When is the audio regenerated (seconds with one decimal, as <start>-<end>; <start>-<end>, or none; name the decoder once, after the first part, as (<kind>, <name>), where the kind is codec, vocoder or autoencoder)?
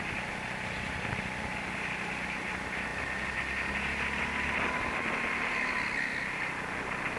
none